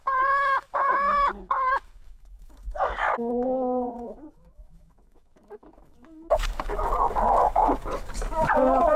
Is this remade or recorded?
remade